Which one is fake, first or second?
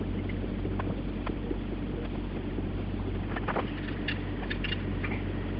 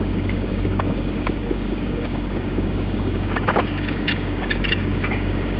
second